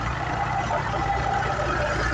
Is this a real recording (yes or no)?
yes